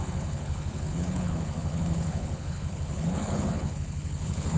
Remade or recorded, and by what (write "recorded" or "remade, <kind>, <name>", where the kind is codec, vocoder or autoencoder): remade, codec, HILCodec